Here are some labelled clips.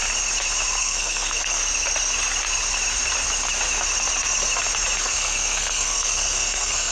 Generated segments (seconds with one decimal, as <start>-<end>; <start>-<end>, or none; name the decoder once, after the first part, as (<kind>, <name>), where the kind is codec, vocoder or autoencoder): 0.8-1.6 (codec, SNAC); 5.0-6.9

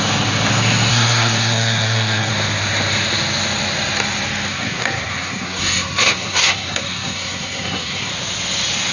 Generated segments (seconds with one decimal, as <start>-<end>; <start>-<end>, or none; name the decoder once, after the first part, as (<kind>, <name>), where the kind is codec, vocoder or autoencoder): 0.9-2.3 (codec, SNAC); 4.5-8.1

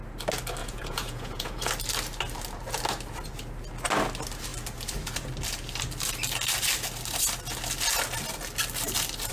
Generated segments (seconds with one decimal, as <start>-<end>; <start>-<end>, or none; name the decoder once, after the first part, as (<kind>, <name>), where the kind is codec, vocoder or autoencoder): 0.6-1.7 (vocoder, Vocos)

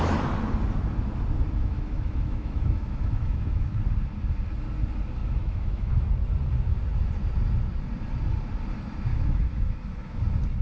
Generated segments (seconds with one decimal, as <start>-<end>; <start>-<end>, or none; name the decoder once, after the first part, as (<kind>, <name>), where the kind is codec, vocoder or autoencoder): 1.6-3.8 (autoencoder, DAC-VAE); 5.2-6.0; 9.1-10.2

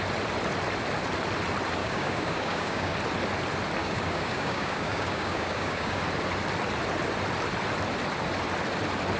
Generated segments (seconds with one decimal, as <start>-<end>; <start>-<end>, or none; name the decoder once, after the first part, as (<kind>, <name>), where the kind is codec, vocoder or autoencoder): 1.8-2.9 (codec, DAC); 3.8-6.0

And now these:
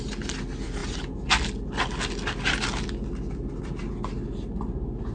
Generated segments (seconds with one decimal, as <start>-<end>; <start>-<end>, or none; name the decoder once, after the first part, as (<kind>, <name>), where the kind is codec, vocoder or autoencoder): none

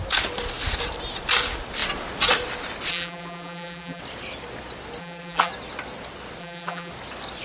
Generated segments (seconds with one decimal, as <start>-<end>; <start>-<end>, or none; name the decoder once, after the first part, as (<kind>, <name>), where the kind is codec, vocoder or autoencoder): 2.9-4.0 (vocoder, BigVGAN v2); 5.0-5.5; 6.4-6.9

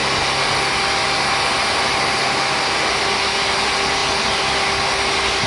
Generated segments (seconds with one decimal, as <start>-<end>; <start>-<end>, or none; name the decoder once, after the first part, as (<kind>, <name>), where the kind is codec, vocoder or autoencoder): none